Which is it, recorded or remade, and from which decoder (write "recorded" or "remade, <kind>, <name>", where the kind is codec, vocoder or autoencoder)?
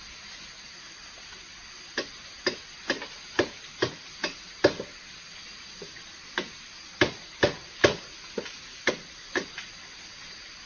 recorded